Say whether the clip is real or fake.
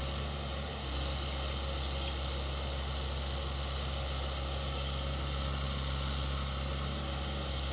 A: real